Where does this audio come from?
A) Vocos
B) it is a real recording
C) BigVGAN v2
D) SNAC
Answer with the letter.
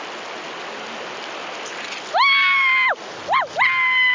B